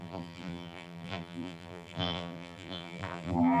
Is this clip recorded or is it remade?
remade